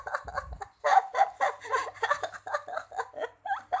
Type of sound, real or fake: real